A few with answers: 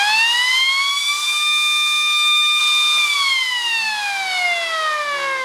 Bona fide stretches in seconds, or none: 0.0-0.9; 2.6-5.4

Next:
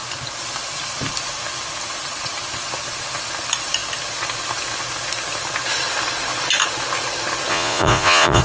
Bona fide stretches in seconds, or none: 0.0-7.5

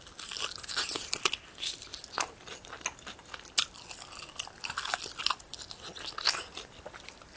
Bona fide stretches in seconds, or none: 0.0-7.4

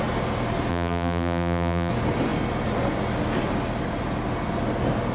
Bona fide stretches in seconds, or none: 0.0-0.7; 1.9-5.1